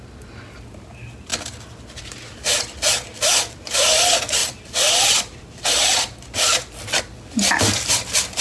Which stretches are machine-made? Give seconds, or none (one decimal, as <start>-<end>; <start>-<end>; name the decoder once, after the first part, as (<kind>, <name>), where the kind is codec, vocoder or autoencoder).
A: 1.3-2.0 (vocoder, BigVGAN v2); 4.4-7.0